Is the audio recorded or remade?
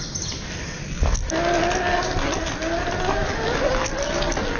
recorded